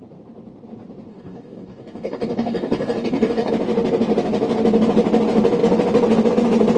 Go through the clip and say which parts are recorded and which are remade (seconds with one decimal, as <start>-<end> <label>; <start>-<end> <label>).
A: 0.0-1.1 recorded; 1.1-3.5 remade; 3.5-6.8 recorded